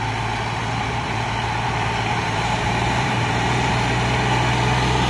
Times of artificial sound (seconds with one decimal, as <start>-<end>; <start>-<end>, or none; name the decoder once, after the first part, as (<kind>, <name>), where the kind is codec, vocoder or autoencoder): 0.6-3.7 (vocoder, BigVGAN v2)